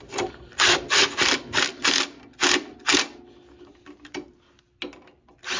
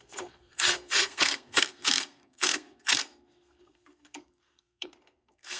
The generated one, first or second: second